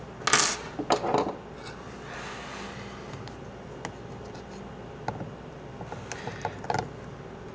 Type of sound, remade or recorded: recorded